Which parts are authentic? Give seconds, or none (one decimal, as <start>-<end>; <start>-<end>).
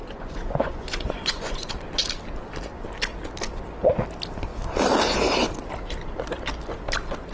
1.7-7.3